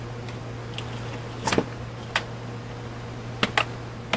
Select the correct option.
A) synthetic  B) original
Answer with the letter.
B